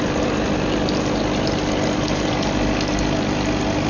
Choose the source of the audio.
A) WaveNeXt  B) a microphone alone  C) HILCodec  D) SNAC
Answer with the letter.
B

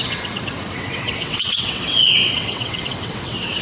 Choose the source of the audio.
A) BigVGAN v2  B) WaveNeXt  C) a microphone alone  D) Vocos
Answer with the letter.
B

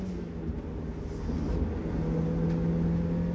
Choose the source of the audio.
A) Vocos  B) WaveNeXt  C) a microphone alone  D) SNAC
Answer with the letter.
C